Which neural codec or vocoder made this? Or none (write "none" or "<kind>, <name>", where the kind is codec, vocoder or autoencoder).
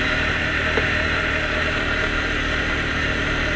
vocoder, BigVGAN v2